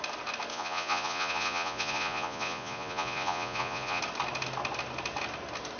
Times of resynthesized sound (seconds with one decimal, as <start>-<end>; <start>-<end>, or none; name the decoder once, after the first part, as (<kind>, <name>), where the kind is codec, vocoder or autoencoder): 0.5-4.0 (vocoder, Vocos)